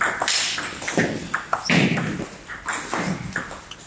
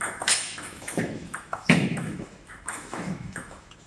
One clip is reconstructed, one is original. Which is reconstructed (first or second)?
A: second